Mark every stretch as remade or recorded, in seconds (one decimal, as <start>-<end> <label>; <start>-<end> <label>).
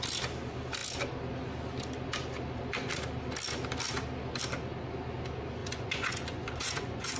0.0-5.6 recorded; 5.6-7.2 remade